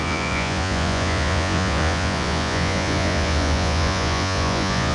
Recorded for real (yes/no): no